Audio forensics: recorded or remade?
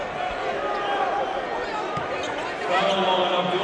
recorded